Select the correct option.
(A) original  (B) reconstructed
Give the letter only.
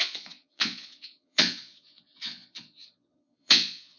B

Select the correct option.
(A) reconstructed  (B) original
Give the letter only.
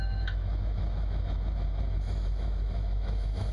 A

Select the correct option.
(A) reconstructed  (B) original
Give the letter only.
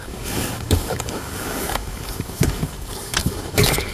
A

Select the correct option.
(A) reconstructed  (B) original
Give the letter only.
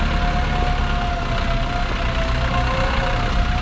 B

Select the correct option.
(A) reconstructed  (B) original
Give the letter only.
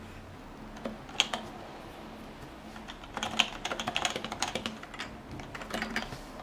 B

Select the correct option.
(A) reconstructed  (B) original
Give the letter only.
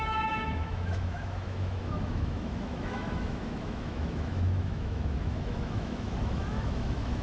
A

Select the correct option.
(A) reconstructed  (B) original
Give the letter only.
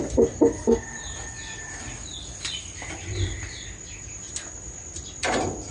B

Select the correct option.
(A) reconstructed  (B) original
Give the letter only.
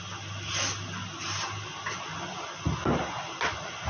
B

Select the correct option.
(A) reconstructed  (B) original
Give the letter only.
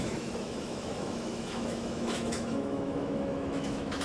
A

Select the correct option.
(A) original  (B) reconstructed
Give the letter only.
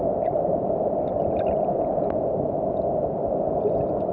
A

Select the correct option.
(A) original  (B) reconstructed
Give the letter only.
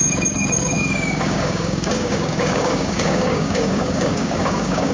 B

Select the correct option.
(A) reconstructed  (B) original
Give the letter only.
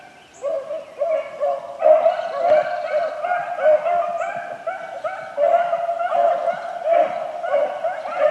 B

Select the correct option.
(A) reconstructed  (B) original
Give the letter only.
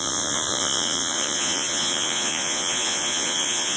A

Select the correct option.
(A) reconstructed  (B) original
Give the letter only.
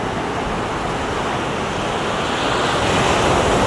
B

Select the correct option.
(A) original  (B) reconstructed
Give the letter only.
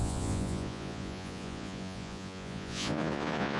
B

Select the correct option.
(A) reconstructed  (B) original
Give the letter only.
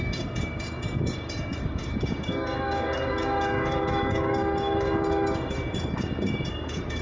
A